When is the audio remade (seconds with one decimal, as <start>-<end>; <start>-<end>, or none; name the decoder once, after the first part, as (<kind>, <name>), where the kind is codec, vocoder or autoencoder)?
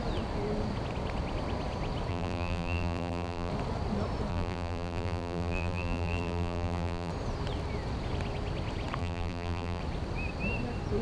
2.1-3.5 (vocoder, BigVGAN v2); 4.3-7.1; 9.0-9.8